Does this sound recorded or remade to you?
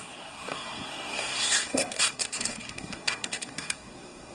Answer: remade